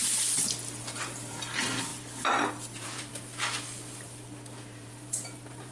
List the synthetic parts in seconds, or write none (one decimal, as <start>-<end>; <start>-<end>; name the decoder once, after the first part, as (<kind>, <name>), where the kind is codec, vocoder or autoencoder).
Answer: 0.8-1.9 (vocoder, BigVGAN v2); 2.5-3.1; 4.6-5.7

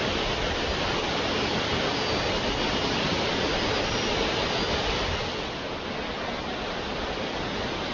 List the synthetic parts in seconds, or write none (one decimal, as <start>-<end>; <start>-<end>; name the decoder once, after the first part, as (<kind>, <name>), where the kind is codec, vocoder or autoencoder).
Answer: none

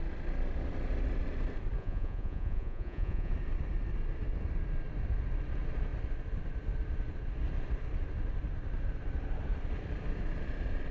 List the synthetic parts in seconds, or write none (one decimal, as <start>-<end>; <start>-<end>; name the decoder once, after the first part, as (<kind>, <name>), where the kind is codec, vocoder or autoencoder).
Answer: 1.8-3.3 (vocoder, Vocos)

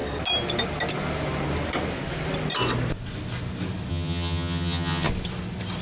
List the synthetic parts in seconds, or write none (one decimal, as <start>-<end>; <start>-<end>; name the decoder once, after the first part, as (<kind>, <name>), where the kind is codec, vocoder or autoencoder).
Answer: 3.9-5.1 (vocoder, HiFi-GAN)

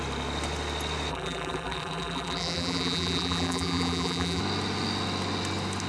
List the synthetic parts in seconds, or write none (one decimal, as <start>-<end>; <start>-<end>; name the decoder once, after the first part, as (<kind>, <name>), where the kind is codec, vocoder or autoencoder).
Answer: 1.1-4.4 (vocoder, BigVGAN v2)

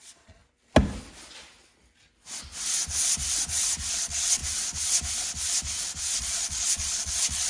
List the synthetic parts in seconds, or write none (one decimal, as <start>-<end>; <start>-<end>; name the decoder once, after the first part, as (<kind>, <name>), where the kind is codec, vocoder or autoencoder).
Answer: 0.0-0.4 (vocoder, Vocos); 3.9-4.4; 6.2-7.5

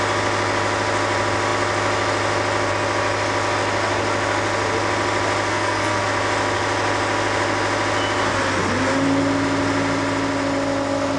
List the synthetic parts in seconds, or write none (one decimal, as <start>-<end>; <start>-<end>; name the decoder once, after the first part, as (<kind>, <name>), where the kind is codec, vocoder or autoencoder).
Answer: 5.5-6.1 (codec, SNAC)